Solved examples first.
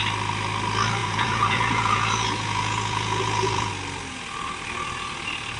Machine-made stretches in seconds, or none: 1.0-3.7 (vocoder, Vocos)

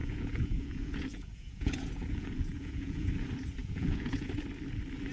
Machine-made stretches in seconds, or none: 0.0-3.1 (vocoder, Vocos); 3.6-4.3